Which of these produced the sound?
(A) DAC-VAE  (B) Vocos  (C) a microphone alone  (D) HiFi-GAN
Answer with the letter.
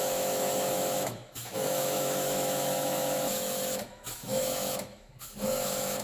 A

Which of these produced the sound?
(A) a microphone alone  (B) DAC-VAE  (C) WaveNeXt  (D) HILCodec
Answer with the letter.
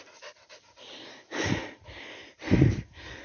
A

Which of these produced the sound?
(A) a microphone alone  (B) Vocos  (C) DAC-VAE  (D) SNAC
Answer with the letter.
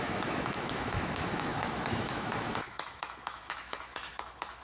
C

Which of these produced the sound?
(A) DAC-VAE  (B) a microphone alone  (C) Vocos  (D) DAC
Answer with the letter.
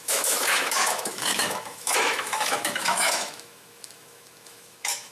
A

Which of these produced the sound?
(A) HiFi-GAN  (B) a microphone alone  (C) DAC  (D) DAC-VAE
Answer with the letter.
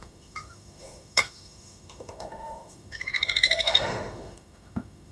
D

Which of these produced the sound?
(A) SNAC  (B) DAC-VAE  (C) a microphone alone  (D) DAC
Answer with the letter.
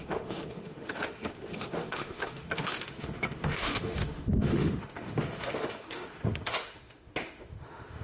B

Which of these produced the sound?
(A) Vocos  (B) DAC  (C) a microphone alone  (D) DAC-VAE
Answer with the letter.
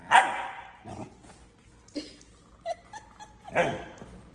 C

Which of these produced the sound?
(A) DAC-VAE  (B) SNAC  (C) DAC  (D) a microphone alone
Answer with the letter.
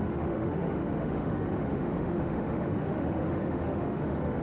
A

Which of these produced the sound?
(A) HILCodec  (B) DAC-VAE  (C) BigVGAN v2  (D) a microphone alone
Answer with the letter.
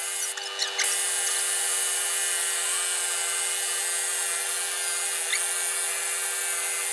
D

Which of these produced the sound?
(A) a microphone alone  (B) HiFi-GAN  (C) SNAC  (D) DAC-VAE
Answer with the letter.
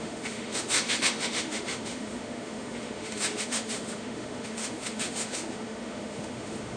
D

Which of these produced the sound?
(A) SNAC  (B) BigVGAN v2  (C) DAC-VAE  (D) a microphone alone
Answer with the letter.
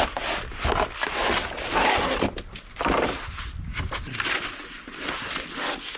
D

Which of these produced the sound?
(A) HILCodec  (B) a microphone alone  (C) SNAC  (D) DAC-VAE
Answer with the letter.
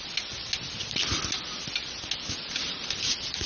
B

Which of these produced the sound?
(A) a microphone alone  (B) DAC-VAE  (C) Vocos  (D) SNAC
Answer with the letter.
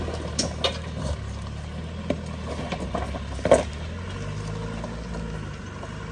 A